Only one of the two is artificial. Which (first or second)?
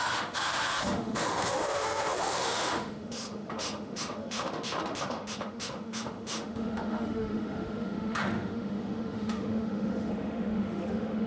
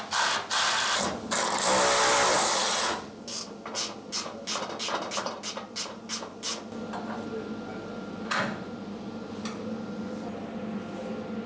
first